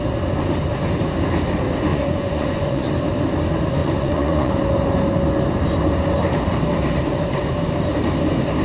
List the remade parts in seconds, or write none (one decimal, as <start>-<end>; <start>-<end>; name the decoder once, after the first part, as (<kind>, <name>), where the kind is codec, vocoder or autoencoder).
1.9-2.9 (vocoder, Vocos); 3.8-4.5

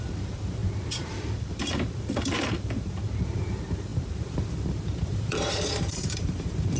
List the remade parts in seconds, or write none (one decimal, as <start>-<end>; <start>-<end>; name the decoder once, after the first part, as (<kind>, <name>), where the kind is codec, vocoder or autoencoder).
0.0-6.8 (vocoder, BigVGAN v2)

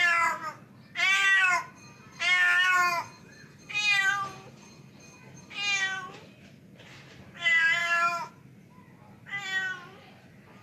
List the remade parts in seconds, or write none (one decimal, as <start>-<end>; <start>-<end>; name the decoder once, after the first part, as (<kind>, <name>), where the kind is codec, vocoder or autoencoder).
7.8-8.3 (autoencoder, DAC-VAE)

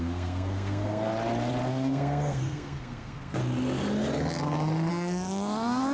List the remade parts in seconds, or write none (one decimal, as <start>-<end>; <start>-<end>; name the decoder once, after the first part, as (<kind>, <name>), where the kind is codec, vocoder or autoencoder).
0.0-1.1 (codec, SNAC); 1.7-3.4; 4.9-5.9

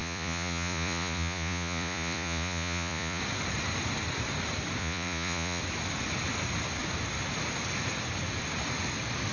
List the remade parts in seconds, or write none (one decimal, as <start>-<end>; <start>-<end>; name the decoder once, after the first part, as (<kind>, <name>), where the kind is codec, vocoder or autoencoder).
0.0-3.2 (vocoder, Vocos); 4.8-5.6